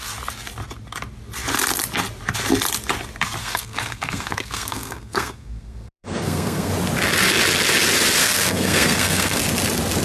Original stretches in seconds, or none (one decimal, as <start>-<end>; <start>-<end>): 0.0-3.4; 6.7-8.2; 9.4-10.0